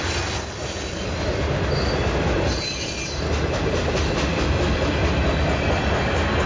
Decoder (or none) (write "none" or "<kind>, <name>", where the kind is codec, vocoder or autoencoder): none